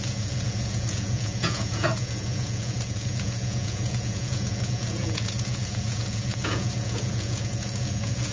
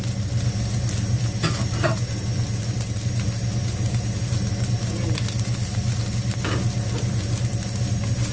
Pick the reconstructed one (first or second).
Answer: first